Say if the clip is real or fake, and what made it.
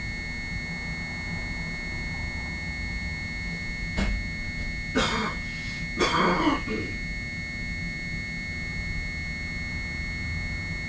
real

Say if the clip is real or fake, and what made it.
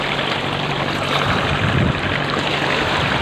real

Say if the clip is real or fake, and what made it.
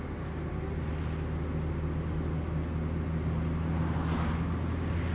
real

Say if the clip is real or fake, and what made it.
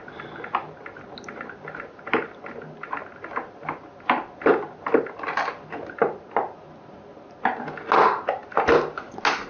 real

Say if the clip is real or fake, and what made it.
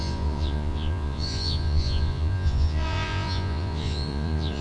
fake, vocoder, Vocos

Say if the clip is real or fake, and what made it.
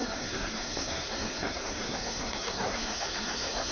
fake, codec, SNAC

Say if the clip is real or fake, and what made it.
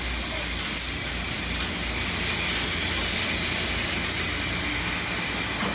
real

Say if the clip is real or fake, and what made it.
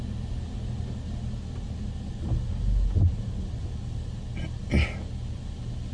real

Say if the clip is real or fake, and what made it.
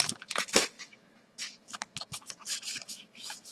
fake, autoencoder, DAC-VAE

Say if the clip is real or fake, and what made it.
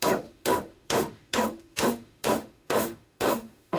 fake, autoencoder, DAC-VAE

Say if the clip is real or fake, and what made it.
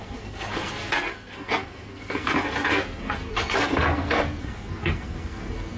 fake, codec, SNAC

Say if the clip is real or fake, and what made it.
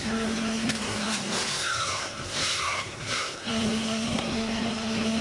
fake, codec, SNAC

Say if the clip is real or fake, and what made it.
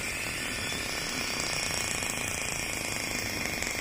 real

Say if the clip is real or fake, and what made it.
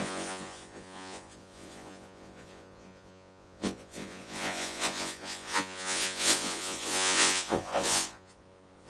fake, vocoder, Vocos